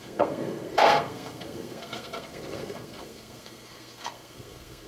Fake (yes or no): yes